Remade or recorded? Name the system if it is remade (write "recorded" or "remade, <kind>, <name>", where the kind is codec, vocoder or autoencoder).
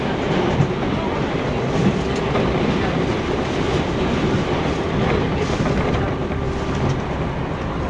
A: recorded